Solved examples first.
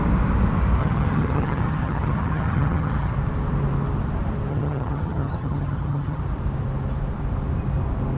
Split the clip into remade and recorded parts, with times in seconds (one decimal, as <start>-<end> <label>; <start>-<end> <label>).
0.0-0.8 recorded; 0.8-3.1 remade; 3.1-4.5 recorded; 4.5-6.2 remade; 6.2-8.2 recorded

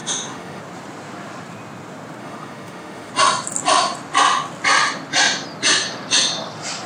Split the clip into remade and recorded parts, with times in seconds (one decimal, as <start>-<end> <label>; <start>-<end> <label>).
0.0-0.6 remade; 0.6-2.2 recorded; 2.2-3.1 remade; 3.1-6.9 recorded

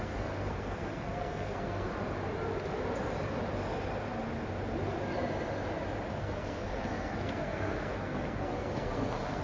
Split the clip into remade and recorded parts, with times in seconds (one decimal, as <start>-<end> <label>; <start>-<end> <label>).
0.0-1.9 remade; 1.9-6.2 recorded; 6.2-9.4 remade

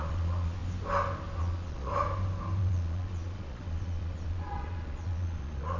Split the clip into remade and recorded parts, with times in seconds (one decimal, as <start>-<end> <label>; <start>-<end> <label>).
0.0-0.6 remade; 0.6-1.4 recorded; 1.4-1.9 remade; 1.9-2.6 recorded; 2.6-5.8 remade

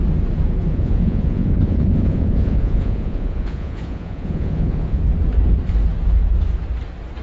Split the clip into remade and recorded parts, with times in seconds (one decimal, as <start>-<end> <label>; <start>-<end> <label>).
0.0-0.7 recorded; 0.7-5.0 remade; 5.0-7.2 recorded